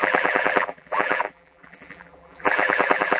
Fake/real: fake